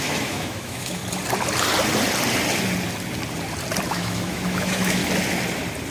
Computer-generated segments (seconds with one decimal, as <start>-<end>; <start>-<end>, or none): 0.0-1.0; 3.9-5.0